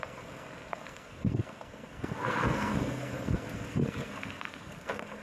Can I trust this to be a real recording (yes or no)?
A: no